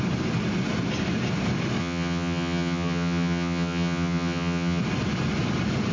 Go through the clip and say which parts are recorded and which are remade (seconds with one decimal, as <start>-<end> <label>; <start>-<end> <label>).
0.0-1.8 recorded; 1.8-4.8 remade; 4.8-5.9 recorded